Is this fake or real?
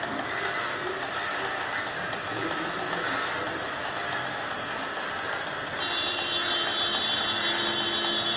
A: fake